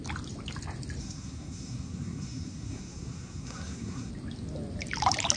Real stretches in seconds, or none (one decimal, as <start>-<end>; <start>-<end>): 0.0-1.0; 4.1-5.4